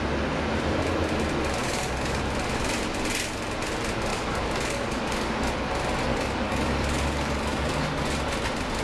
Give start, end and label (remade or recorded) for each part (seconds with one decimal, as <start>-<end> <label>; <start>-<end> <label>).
0.0-1.6 recorded; 1.6-2.2 remade; 2.2-4.1 recorded; 4.1-5.5 remade; 5.5-6.1 recorded; 6.1-8.0 remade; 8.0-8.8 recorded